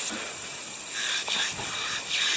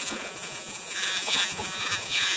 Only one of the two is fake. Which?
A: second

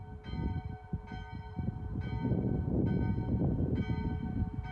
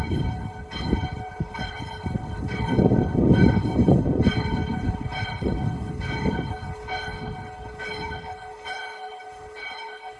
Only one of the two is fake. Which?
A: second